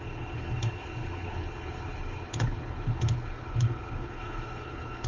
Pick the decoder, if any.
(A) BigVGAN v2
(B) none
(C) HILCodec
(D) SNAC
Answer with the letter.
C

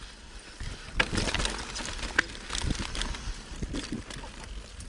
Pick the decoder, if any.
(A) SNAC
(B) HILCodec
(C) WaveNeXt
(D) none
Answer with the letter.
D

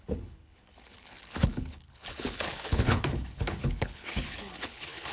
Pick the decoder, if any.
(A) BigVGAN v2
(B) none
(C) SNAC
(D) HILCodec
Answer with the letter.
D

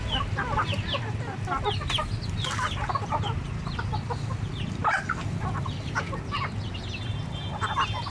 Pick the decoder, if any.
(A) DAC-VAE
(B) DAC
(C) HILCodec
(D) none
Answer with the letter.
D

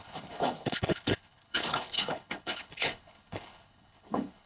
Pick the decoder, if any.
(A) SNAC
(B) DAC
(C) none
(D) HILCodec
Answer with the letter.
D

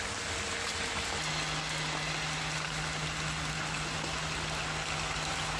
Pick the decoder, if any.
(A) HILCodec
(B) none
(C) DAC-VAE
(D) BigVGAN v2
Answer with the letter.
B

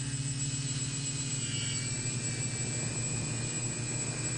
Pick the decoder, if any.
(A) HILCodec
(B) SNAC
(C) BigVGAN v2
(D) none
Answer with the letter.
D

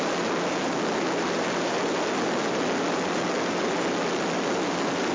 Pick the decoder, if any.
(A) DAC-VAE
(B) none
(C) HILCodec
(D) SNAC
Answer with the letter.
B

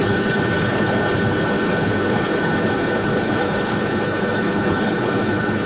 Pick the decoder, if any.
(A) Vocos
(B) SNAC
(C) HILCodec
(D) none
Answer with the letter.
C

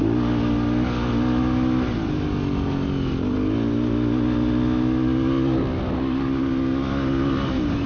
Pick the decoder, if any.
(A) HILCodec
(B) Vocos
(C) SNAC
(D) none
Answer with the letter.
D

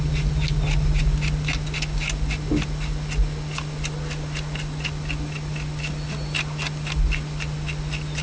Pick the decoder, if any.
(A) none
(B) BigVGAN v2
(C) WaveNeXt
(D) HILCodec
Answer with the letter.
A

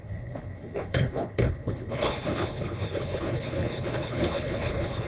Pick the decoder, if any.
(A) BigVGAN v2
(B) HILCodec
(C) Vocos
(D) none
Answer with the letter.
B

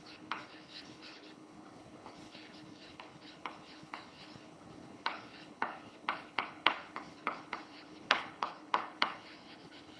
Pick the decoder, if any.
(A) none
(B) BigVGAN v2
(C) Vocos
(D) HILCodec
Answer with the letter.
D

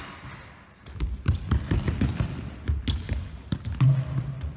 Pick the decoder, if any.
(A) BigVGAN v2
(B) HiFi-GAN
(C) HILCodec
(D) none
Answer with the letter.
D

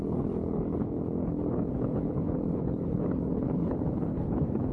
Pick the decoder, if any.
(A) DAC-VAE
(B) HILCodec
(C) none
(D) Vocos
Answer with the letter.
B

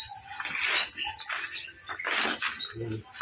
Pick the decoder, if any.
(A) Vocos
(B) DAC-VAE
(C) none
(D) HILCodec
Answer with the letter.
C